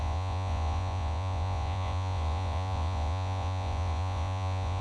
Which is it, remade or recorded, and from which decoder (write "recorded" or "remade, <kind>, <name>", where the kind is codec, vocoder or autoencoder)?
remade, vocoder, Vocos